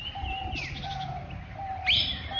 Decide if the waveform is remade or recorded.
recorded